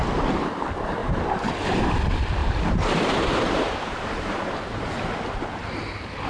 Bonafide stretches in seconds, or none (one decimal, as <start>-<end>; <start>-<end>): 0.0-1.0; 1.8-2.4; 5.2-6.3